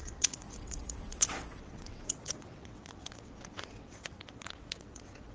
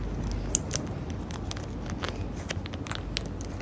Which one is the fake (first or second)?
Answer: first